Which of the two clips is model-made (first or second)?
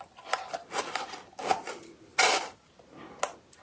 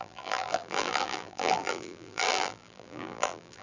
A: second